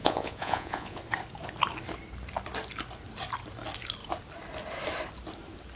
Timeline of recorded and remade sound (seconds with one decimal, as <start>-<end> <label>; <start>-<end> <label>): 0.0-1.0 remade; 1.0-5.8 recorded